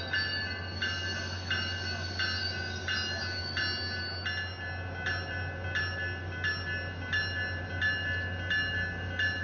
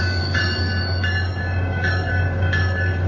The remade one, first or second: second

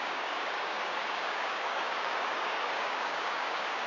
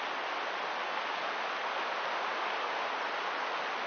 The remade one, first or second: first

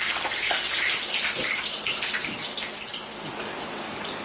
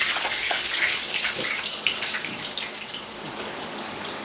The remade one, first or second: second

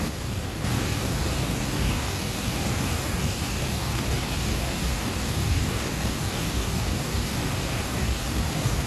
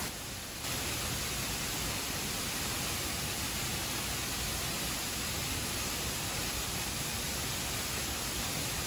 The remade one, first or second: first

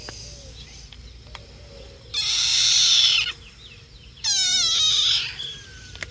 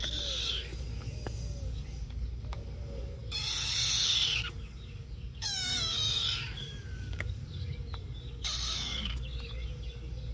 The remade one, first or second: second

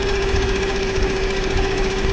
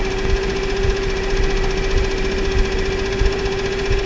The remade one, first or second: first